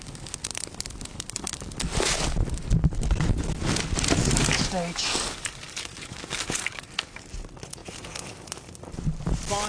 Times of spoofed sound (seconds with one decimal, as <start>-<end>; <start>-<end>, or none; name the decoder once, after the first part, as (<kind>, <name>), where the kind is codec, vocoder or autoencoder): 4.2-7.3 (codec, DAC)